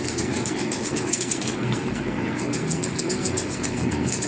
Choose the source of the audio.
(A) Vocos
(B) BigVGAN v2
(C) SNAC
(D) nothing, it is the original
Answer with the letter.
C